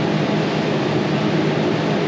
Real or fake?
real